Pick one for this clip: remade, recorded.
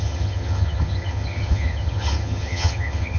remade